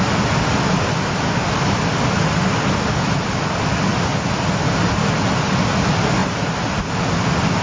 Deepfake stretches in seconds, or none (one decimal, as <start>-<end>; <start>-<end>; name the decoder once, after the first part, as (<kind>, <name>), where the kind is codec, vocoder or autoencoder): none